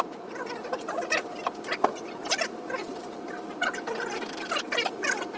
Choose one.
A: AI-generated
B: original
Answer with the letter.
A